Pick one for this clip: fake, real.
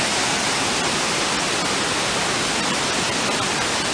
real